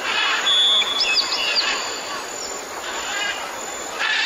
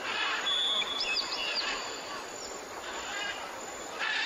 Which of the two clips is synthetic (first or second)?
second